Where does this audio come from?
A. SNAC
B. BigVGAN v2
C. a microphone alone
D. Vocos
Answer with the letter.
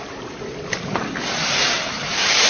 B